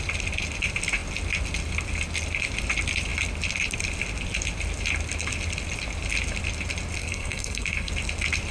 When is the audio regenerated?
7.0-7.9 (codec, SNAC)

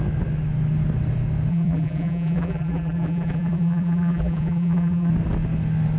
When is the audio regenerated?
1.5-5.1 (vocoder, BigVGAN v2)

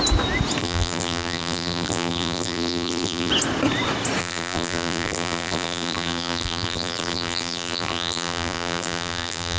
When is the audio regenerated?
0.6-3.3 (vocoder, BigVGAN v2); 4.2-9.6

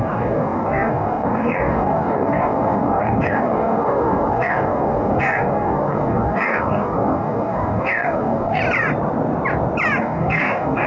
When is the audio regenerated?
0.0-8.6 (codec, DAC); 10.0-10.9

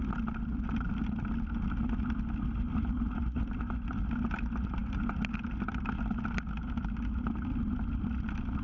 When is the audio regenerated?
none